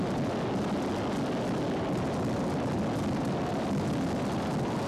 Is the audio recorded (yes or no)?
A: yes